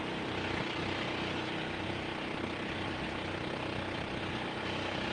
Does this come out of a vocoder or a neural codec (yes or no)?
no